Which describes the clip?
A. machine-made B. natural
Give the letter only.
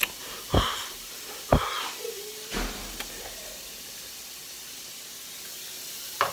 B